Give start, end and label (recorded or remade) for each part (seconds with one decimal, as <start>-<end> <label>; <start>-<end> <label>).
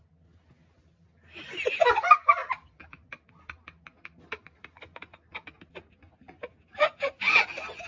0.0-7.9 recorded